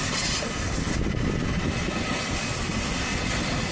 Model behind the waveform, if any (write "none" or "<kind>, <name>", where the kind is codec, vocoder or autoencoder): none